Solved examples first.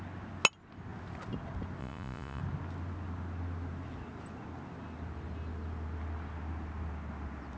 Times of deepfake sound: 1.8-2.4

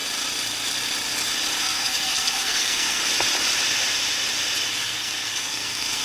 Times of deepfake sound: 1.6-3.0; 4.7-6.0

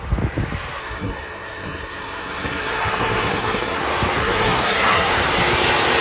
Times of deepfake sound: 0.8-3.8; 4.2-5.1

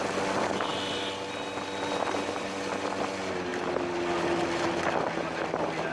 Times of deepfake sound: none

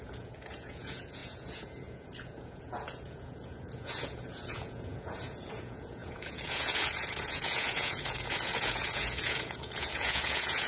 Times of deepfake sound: 0.0-10.7

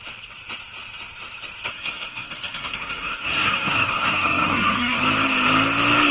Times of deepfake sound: 1.7-5.0

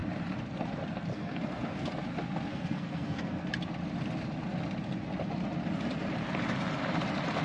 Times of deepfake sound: 1.1-1.9; 2.5-3.5

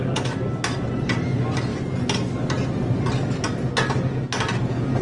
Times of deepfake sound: none